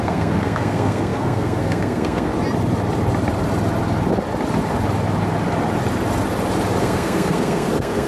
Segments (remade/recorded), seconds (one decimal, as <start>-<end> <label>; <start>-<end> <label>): 0.0-2.3 remade; 2.3-6.8 recorded; 6.8-8.1 remade